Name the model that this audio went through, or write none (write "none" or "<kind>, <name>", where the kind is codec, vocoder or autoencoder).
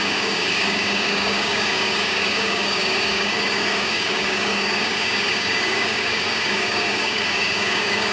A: codec, DAC